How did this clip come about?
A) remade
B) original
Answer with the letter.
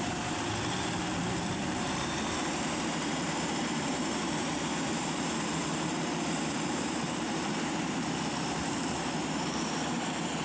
A